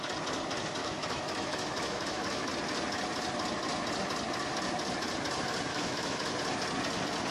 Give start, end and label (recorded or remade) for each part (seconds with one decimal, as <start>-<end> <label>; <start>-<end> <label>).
0.0-0.8 recorded; 0.8-2.5 remade; 2.5-5.7 recorded; 5.7-6.3 remade; 6.3-7.3 recorded